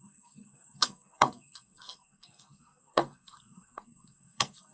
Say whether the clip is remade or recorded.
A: remade